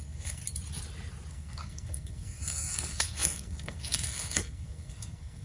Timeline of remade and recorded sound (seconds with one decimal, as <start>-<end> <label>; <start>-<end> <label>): 0.0-0.4 remade; 0.4-1.3 recorded; 1.3-5.4 remade